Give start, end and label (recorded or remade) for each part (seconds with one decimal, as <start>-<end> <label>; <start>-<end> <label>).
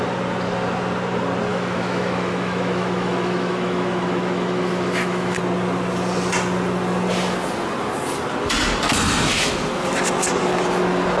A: 0.0-1.5 recorded; 1.5-5.4 remade; 5.4-11.2 recorded